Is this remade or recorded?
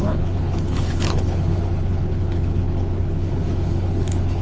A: remade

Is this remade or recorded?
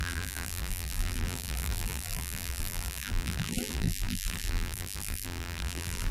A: remade